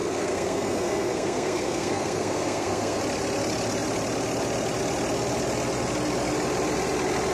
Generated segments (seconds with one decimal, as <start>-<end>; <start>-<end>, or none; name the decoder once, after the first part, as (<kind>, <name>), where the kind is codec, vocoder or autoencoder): 0.0-3.0 (codec, SNAC)